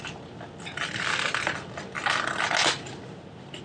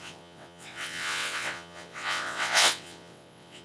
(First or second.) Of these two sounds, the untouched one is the first